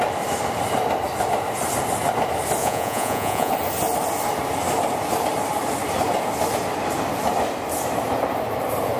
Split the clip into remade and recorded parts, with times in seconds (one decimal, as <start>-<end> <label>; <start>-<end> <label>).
0.0-2.6 recorded; 2.6-3.5 remade; 3.5-9.0 recorded